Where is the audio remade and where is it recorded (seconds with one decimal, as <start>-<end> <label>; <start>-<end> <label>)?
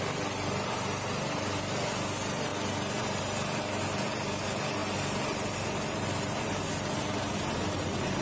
0.0-8.2 recorded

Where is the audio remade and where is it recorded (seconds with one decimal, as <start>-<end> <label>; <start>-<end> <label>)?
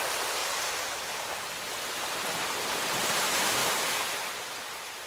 0.0-0.4 recorded; 0.4-1.3 remade; 1.3-5.1 recorded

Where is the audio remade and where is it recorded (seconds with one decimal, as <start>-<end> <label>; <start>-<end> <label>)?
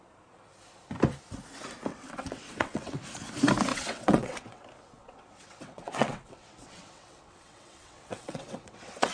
0.0-1.9 recorded; 1.9-3.0 remade; 3.0-3.7 recorded; 3.7-4.6 remade; 4.6-5.0 recorded; 5.0-9.1 remade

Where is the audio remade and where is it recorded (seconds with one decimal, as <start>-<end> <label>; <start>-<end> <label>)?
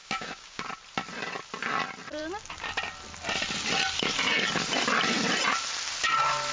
0.0-0.6 remade; 0.6-6.5 recorded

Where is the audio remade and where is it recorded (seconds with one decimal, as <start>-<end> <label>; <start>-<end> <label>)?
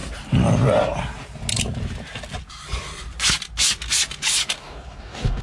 0.0-4.4 recorded; 4.4-5.4 remade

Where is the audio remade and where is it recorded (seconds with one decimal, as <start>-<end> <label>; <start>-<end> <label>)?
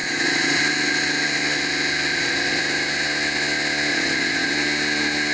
0.0-0.6 remade; 0.6-2.1 recorded; 2.1-2.6 remade; 2.6-3.9 recorded; 3.9-4.5 remade; 4.5-5.3 recorded